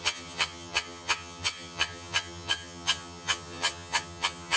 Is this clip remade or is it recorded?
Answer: remade